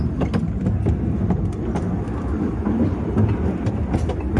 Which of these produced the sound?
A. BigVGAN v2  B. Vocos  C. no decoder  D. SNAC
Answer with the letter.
C